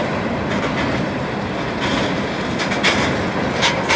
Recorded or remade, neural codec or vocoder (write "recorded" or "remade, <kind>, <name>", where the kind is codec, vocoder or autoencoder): recorded